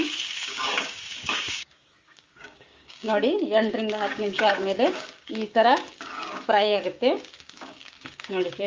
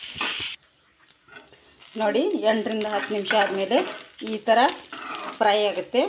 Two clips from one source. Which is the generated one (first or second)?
first